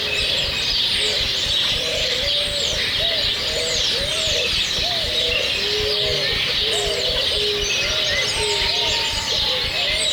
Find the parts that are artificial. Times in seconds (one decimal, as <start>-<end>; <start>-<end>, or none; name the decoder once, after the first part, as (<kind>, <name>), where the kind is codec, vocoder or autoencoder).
0.0-2.3 (vocoder, BigVGAN v2); 4.1-5.1